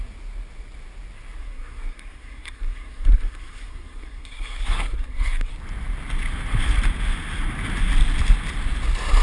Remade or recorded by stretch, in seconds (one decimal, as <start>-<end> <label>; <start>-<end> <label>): 0.0-1.4 recorded; 1.4-5.5 remade; 5.5-9.2 recorded